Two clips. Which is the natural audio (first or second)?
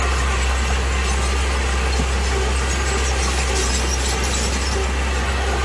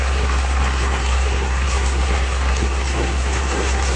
first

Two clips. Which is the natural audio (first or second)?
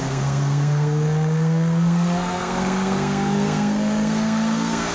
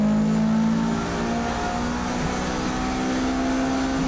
second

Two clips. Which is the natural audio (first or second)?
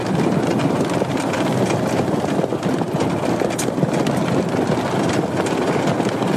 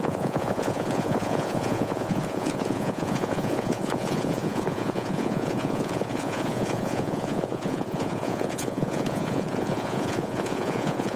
first